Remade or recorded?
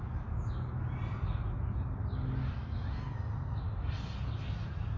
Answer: recorded